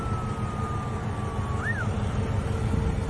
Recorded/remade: recorded